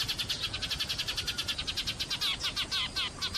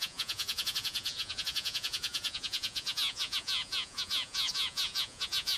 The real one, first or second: first